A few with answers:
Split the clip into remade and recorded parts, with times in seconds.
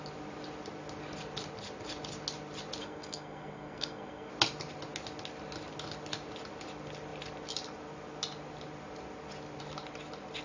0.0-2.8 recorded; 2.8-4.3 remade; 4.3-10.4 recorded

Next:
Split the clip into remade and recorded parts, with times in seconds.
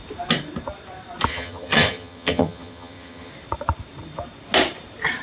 0.0-1.3 recorded; 1.3-3.3 remade; 3.3-5.2 recorded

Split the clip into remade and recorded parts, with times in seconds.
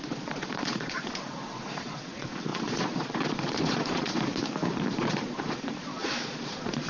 0.0-4.3 remade; 4.3-4.9 recorded; 4.9-6.9 remade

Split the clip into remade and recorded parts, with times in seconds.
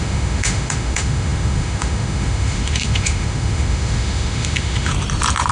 0.0-4.9 remade; 4.9-5.5 recorded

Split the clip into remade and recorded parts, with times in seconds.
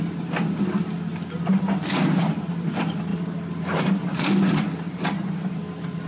0.0-6.1 recorded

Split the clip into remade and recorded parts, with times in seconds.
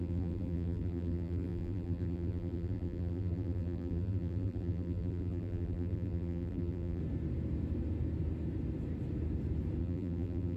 0.0-7.0 remade; 7.0-9.8 recorded; 9.8-10.6 remade